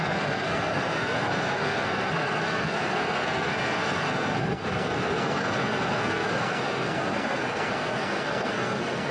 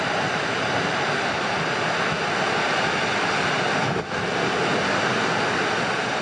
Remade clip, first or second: first